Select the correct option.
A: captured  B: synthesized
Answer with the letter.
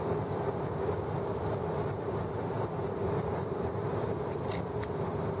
A